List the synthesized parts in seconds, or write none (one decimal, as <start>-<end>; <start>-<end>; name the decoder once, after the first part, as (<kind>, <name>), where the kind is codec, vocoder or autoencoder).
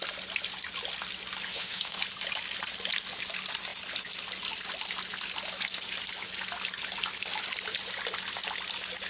1.5-2.0 (autoencoder, DAC-VAE)